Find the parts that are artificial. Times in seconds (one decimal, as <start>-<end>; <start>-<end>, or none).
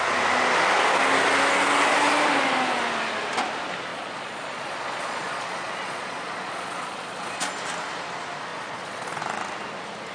3.9-7.5; 8.5-9.2